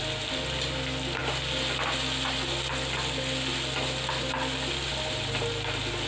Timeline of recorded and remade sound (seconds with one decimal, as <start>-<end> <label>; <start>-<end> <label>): 0.0-6.1 recorded